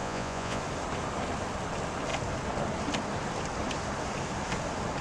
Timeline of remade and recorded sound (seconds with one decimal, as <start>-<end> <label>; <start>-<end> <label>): 0.0-0.6 remade; 0.6-5.0 recorded